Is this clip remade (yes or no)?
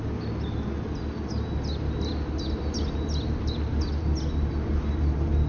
no